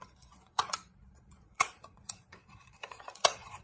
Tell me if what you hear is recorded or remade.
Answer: remade